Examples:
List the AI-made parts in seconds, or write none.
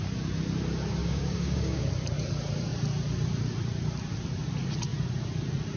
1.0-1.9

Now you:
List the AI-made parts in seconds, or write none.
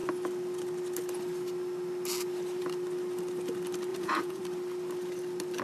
3.9-4.4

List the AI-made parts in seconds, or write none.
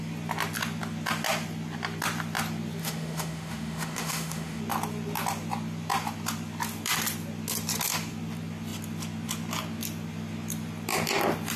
2.8-4.6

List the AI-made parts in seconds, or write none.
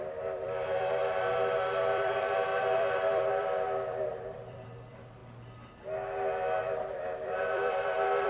0.0-5.2; 6.6-8.3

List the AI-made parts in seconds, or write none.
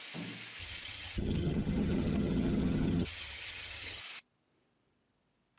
0.6-4.0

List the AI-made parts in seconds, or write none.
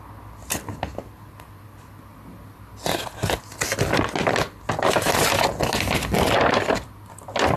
none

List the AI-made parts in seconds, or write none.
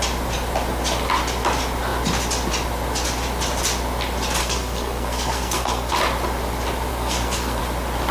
4.4-5.9; 6.9-7.6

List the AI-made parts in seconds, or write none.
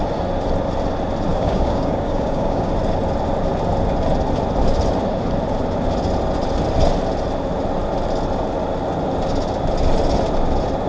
1.3-2.7